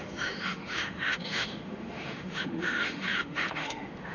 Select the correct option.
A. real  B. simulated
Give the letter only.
B